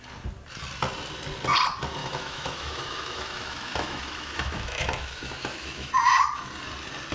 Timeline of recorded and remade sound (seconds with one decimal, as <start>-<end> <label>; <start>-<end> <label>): 0.0-2.0 recorded; 2.0-5.9 remade; 5.9-7.1 recorded